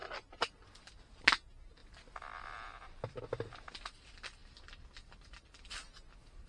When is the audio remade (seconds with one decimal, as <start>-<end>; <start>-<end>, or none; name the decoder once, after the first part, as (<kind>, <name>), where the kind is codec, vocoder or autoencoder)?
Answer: 0.0-0.8 (vocoder, BigVGAN v2); 1.8-3.2; 4.4-5.6